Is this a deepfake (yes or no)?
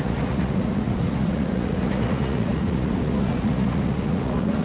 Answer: yes